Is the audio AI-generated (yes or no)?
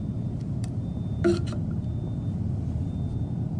no